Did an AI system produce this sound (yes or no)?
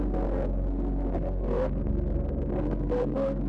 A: yes